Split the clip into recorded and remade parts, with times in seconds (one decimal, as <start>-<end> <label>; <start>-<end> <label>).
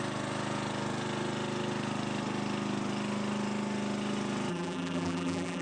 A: 0.0-4.5 recorded; 4.5-5.6 remade